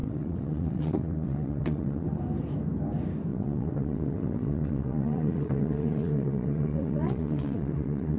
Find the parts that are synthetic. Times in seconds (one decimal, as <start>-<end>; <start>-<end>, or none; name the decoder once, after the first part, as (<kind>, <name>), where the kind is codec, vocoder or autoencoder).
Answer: 0.0-2.2 (vocoder, WaveNeXt); 3.3-8.2